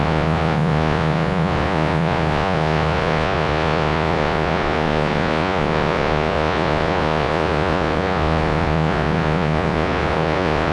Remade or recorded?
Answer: remade